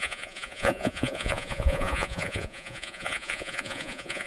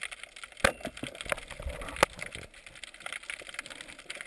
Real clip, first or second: second